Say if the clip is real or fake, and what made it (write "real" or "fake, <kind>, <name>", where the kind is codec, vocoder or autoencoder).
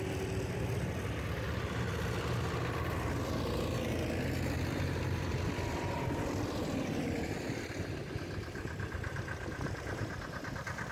real